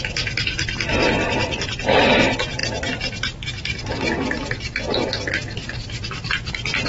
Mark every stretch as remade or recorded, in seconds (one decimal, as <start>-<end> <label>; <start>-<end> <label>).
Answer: 0.0-6.9 recorded